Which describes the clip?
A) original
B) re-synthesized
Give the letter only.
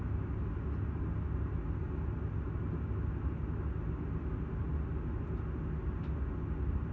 A